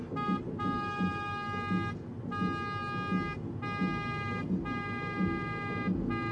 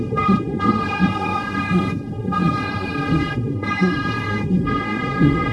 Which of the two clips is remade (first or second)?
second